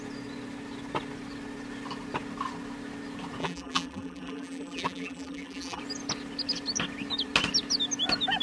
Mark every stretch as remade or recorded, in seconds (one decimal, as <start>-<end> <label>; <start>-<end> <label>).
0.0-3.4 recorded; 3.4-5.8 remade; 5.8-8.4 recorded